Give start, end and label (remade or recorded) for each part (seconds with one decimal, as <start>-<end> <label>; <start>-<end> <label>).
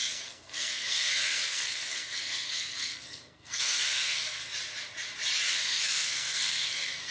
0.0-4.4 remade; 4.4-5.5 recorded; 5.5-7.1 remade